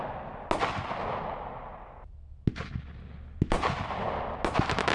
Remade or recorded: recorded